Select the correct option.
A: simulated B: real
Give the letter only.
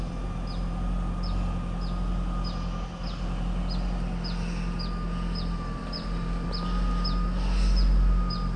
B